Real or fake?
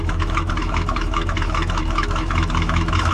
fake